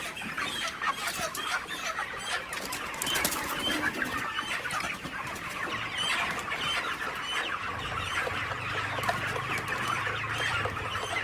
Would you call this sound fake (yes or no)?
no